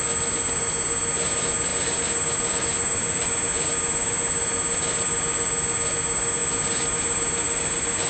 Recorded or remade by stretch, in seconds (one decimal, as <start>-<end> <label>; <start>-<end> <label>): 0.0-8.1 recorded